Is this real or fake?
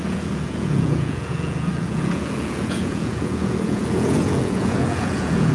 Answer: fake